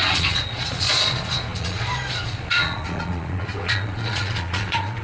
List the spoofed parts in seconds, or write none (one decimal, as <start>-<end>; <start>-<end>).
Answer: 0.0-5.0